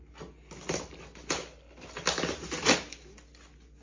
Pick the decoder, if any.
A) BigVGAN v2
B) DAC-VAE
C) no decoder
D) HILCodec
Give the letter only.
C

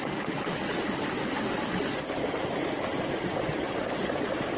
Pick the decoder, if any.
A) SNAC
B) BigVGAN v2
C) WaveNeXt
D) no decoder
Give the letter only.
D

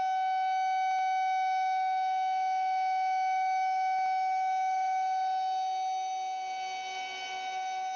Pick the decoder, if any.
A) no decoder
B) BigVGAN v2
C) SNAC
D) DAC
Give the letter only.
A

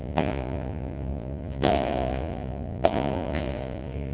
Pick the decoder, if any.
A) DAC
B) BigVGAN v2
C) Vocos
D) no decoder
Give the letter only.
C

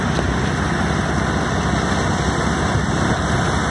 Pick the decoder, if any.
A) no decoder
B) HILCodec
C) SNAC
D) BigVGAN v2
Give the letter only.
A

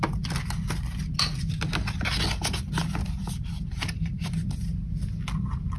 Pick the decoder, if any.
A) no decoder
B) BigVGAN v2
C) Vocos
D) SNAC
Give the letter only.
A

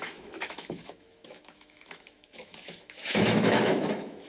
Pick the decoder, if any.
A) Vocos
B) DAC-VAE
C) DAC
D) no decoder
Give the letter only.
B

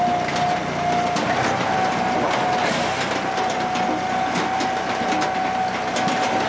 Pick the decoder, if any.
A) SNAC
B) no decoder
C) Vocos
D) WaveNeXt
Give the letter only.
B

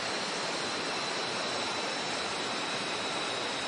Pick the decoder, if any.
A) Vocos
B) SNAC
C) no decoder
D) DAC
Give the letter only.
C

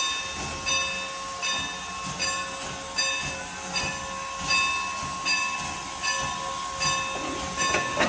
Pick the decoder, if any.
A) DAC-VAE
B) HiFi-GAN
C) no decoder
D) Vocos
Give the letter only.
C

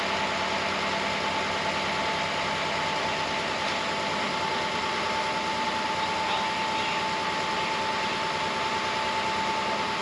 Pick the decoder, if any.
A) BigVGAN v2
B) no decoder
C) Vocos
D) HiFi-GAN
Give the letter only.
B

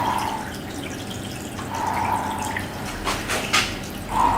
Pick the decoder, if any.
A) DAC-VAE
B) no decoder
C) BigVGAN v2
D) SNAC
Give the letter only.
B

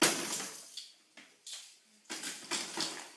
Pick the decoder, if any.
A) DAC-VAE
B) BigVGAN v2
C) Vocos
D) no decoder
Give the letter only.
D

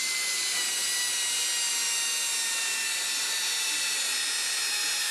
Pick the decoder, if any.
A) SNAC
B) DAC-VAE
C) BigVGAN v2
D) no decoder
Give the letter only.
D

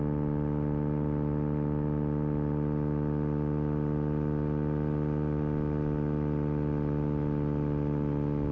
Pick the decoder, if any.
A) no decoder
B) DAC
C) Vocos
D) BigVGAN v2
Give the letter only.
A